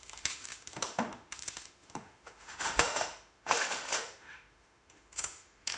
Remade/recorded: remade